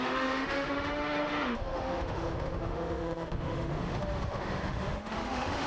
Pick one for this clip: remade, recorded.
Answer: remade